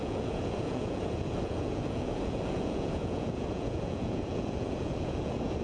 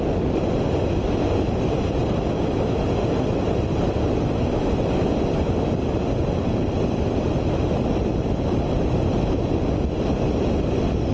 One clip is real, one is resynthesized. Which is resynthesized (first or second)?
first